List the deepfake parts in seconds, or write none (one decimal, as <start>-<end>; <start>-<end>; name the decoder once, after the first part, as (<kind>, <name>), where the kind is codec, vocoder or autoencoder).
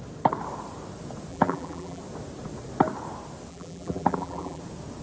1.3-2.0 (vocoder, BigVGAN v2); 3.5-4.6